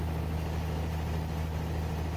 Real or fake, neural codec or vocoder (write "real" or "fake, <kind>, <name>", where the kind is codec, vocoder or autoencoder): real